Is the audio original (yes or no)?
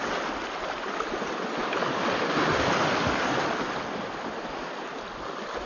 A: yes